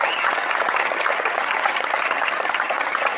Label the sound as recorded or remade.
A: remade